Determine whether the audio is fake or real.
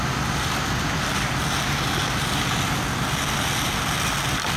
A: real